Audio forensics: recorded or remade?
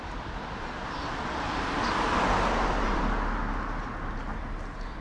recorded